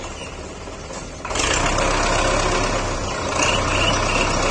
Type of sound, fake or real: real